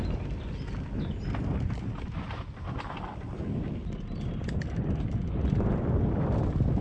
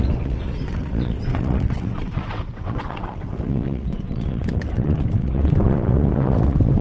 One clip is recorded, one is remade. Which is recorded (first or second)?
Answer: first